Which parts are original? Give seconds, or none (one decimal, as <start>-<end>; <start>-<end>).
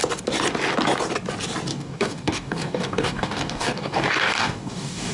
0.0-1.7